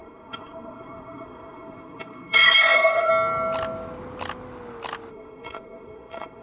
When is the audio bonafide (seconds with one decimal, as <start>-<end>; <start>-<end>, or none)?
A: 3.1-5.1

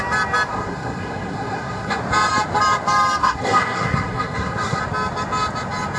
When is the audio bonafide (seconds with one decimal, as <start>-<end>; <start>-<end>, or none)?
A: 0.0-0.5; 2.0-3.2; 4.8-6.0

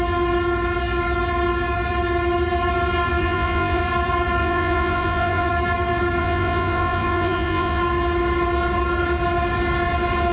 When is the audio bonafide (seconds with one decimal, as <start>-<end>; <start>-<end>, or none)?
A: 0.0-3.2; 3.8-4.4; 5.5-6.2; 7.8-10.3

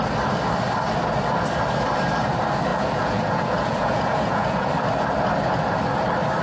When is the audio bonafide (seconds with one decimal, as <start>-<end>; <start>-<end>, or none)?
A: 0.0-2.7; 4.7-6.4

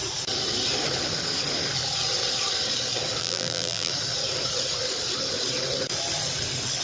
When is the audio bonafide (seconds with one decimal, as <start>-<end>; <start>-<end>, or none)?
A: 0.0-3.2; 3.9-6.8

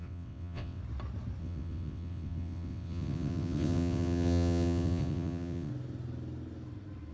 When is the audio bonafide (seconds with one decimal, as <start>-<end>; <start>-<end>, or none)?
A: 0.8-1.4; 5.7-7.1

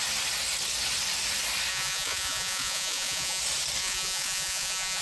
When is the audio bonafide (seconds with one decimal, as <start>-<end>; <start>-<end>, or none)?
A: 0.0-1.7; 3.4-3.8